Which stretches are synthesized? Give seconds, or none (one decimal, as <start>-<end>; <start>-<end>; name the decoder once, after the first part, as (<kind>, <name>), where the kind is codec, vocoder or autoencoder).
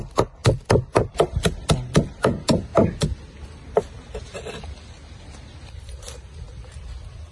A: none